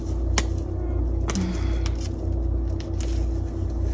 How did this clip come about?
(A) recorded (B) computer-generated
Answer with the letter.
A